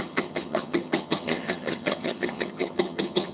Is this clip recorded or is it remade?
remade